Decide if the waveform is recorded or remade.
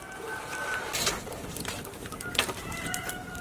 remade